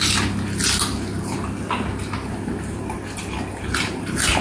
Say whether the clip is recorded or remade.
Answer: recorded